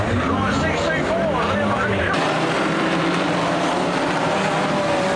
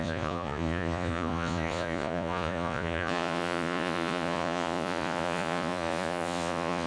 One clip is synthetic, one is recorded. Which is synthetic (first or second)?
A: second